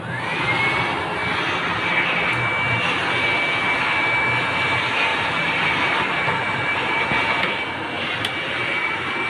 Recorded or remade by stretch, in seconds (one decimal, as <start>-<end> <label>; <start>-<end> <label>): 0.0-5.1 recorded; 5.1-7.0 remade; 7.0-9.3 recorded